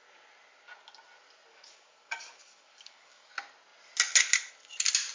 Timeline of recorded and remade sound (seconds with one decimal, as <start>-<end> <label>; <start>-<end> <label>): 0.0-1.5 recorded; 1.5-3.3 remade; 3.3-5.1 recorded